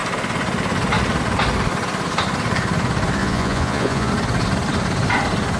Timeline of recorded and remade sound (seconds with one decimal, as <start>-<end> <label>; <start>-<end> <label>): 0.0-3.2 recorded; 3.2-4.1 remade; 4.1-5.6 recorded